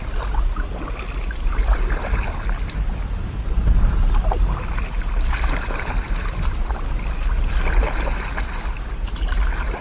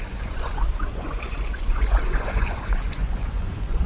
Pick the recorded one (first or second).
first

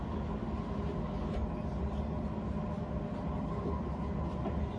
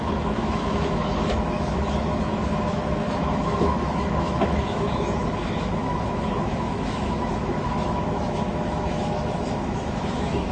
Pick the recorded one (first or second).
first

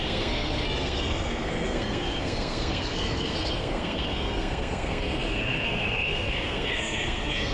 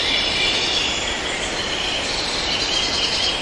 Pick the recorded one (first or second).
second